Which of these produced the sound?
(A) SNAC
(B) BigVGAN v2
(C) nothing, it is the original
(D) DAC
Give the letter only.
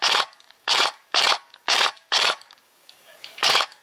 D